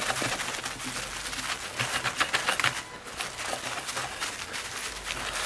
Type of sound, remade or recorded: recorded